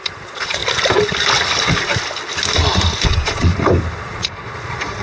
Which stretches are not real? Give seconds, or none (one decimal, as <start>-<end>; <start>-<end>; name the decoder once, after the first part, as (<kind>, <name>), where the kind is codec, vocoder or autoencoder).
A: 0.0-0.6 (vocoder, Vocos); 3.1-3.5; 4.0-5.0